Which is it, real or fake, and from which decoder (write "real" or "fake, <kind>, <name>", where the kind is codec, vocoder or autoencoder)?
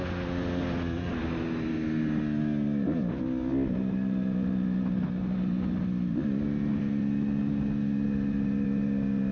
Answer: real